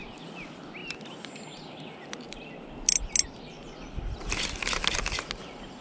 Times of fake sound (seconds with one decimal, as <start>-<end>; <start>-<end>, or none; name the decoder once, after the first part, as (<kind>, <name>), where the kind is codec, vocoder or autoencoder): none